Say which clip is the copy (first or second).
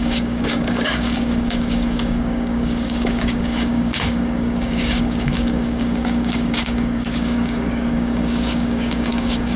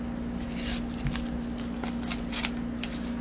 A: first